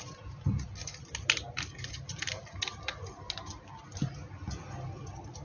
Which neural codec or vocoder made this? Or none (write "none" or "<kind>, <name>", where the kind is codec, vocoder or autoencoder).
none